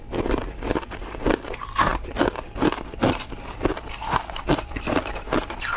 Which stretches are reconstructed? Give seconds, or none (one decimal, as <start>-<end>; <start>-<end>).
none